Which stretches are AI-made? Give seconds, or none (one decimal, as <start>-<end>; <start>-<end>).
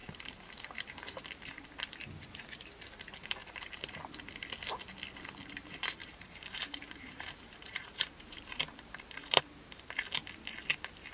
0.0-1.2; 3.4-4.0; 6.0-9.4